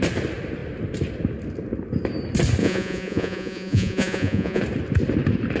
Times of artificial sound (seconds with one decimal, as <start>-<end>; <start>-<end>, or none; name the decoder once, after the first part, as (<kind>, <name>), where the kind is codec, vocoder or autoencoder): 2.6-4.6 (vocoder, Vocos)